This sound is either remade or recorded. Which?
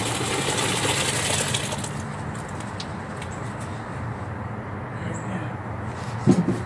recorded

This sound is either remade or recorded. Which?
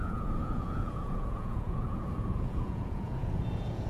remade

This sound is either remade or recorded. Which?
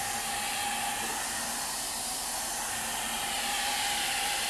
remade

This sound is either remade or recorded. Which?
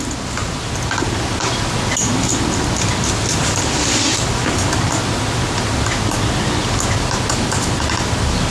recorded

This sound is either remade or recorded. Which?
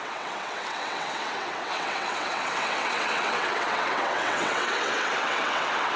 remade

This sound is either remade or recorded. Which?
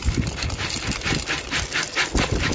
recorded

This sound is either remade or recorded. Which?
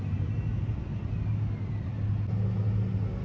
recorded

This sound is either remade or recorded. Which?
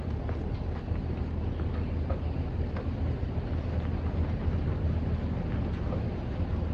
recorded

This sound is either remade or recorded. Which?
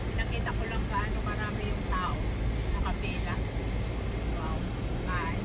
recorded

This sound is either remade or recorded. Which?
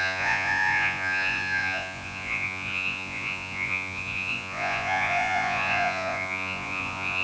remade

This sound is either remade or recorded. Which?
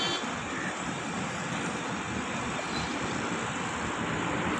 recorded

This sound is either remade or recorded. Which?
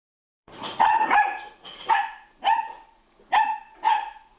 remade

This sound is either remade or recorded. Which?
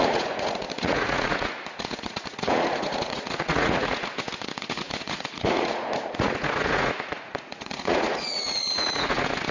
remade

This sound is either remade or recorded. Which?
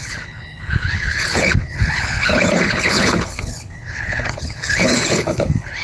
remade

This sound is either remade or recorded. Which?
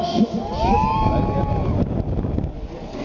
recorded